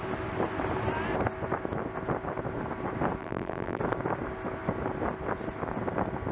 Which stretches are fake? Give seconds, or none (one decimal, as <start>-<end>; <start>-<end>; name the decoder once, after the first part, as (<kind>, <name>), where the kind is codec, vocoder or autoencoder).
3.2-3.8 (vocoder, BigVGAN v2)